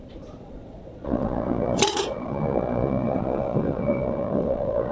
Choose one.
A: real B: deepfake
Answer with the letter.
B